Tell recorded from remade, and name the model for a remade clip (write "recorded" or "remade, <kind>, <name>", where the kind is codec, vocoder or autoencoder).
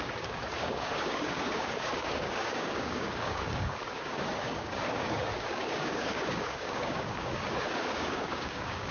remade, codec, DAC